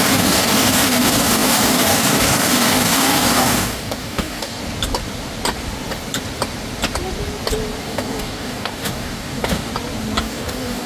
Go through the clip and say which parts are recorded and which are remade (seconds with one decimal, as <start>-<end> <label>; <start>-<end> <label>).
0.0-4.6 remade; 4.6-7.8 recorded; 7.8-9.7 remade; 9.7-10.2 recorded; 10.2-10.9 remade